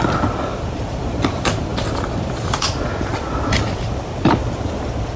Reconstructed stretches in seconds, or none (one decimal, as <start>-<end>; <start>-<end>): 0.5-1.1; 1.7-4.8